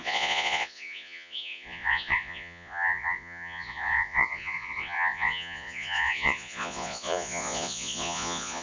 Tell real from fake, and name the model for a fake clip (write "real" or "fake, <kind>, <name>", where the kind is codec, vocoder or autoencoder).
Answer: fake, vocoder, Vocos